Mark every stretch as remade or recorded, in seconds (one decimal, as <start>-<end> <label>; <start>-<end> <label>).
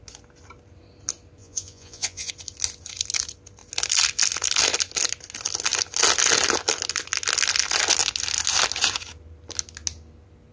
0.0-1.4 recorded; 1.4-2.3 remade; 2.3-10.5 recorded